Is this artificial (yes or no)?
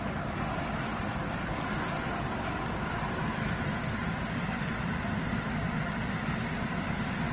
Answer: yes